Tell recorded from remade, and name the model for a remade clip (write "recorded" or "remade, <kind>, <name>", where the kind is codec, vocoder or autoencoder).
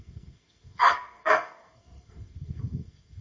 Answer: remade, codec, SNAC